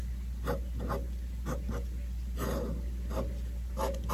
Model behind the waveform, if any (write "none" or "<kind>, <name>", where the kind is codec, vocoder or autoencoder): none